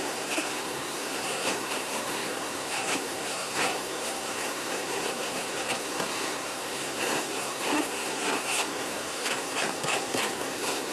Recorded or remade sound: remade